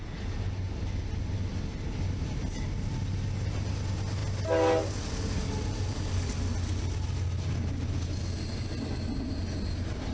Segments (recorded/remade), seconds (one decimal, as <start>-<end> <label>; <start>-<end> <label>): 0.0-10.1 recorded